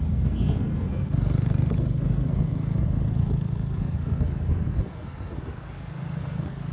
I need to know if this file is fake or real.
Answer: fake